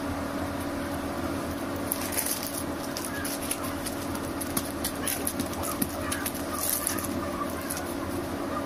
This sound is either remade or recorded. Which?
recorded